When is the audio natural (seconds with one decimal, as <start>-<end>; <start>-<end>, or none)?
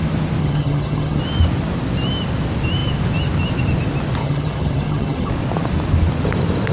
0.0-0.4; 1.2-4.2; 5.3-6.7